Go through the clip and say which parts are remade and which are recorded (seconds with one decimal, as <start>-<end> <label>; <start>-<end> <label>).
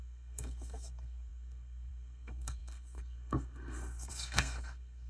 0.0-5.1 remade